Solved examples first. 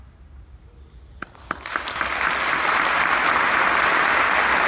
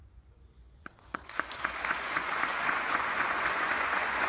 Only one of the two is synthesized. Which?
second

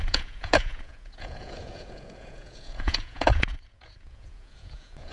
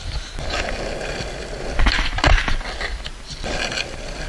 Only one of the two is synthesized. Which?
first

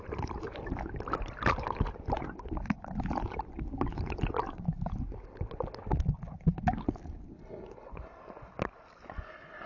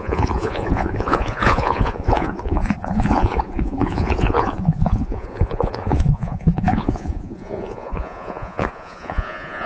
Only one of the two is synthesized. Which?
second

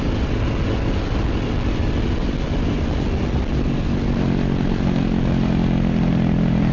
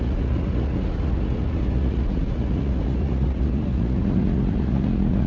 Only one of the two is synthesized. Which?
second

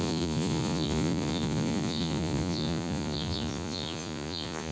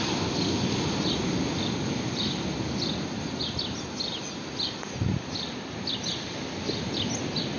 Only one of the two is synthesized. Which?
first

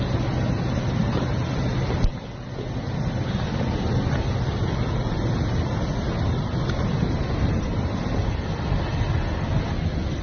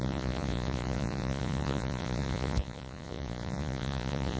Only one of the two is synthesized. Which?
second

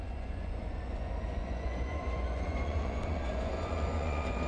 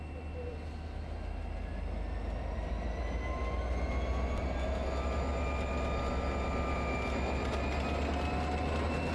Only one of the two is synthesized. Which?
first